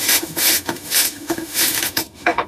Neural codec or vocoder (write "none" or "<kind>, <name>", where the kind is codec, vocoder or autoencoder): autoencoder, DAC-VAE